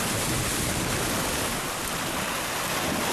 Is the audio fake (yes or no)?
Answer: no